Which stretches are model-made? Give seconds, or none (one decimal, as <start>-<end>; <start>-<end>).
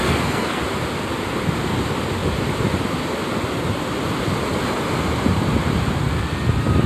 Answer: 0.0-0.6